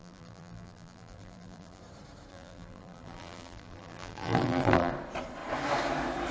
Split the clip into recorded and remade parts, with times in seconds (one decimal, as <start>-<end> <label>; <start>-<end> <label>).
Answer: 0.0-1.8 remade; 1.8-2.3 recorded; 2.3-4.9 remade; 4.9-6.3 recorded